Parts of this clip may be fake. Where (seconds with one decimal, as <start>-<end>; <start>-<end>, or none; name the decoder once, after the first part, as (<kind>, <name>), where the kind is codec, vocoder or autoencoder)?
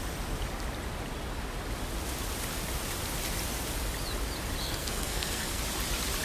4.6-5.6 (codec, SNAC)